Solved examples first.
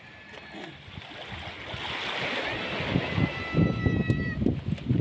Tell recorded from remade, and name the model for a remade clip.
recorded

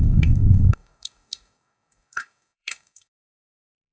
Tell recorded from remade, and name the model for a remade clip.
remade, codec, DAC